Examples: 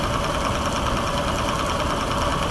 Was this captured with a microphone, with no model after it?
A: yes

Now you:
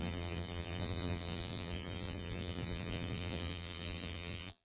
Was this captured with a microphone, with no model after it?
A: no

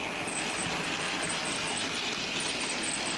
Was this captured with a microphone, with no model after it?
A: yes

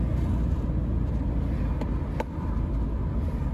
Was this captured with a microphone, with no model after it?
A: yes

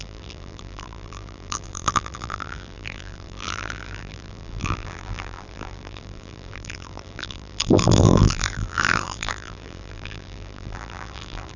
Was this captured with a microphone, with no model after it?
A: no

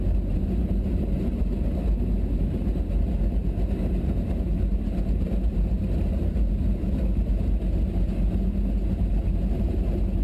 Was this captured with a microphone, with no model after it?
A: yes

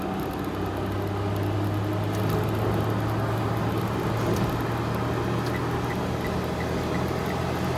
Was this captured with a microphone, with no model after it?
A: yes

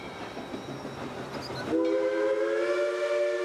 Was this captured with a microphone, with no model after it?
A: yes